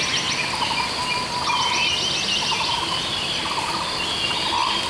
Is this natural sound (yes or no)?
yes